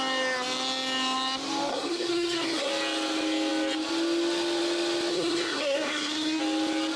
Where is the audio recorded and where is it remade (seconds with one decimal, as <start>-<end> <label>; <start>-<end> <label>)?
0.0-1.7 recorded; 1.7-2.7 remade; 2.7-5.1 recorded; 5.1-6.4 remade; 6.4-7.0 recorded